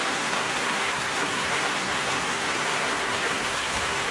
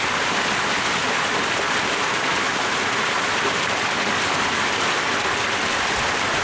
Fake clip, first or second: first